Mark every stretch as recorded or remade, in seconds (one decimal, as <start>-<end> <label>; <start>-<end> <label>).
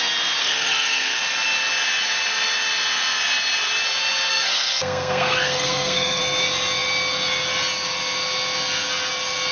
0.0-0.4 recorded; 0.4-1.2 remade; 1.2-4.3 recorded; 4.3-6.2 remade; 6.2-9.5 recorded